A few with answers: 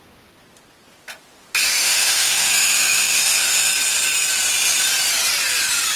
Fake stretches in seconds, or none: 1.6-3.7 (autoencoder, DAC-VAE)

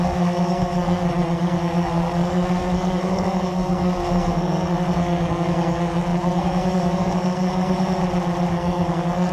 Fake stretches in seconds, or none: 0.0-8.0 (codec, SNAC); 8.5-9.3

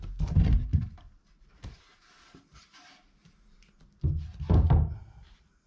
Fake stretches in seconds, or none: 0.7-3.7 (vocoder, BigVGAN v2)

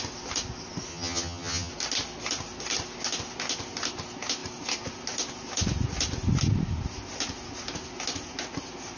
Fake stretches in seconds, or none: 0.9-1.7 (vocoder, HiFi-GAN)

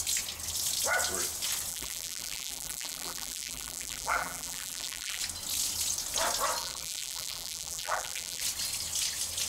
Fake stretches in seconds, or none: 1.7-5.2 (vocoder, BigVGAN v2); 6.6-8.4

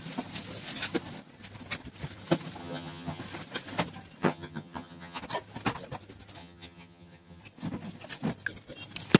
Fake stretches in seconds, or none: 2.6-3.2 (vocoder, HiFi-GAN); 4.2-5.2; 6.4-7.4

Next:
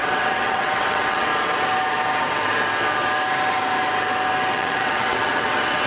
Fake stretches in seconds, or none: 0.0-1.3 (vocoder, WaveNeXt); 4.5-5.9

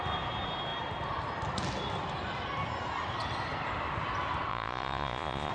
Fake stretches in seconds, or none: 4.5-5.5 (vocoder, Vocos)